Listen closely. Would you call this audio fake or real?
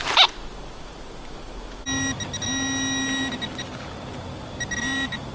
real